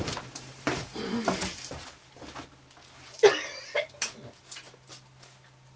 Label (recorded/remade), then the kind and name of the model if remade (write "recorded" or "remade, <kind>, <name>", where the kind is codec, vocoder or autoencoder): recorded